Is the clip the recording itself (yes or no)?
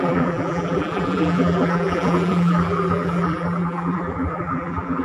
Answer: no